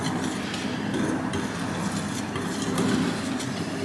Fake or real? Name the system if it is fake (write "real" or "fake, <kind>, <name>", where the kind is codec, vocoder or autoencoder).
real